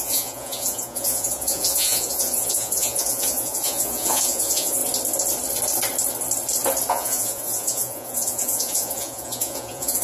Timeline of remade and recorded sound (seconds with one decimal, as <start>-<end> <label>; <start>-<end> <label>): 0.0-4.8 remade; 4.8-6.9 recorded; 6.9-10.0 remade